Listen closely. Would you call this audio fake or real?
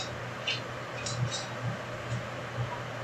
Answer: real